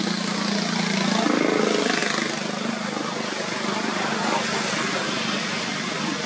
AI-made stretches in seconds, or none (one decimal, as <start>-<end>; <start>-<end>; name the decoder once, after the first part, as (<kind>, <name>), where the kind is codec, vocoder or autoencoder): none